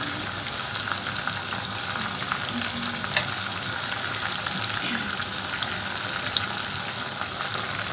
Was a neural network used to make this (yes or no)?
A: no